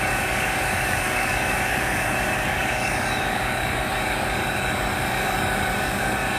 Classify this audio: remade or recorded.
remade